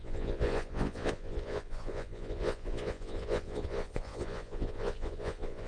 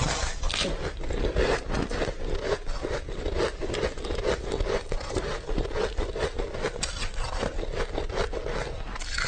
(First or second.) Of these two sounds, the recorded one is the second